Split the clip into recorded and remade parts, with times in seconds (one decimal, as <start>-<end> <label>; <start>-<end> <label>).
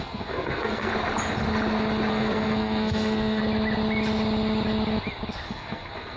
0.0-0.9 remade; 0.9-2.1 recorded; 2.1-3.4 remade; 3.4-5.5 recorded; 5.5-6.2 remade